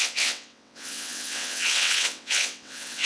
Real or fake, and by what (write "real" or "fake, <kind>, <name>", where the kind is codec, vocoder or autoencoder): fake, vocoder, WaveNeXt